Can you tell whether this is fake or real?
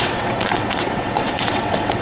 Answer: fake